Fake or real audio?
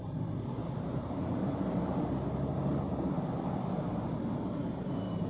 fake